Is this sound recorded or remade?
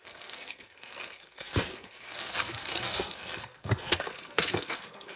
remade